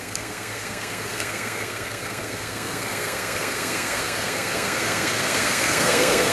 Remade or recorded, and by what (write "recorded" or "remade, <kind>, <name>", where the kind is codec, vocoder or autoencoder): remade, codec, SNAC